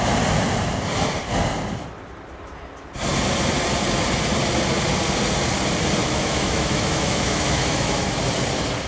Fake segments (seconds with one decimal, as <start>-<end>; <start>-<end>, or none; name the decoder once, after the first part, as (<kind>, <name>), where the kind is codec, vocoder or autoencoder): 6.0-8.2 (autoencoder, DAC-VAE)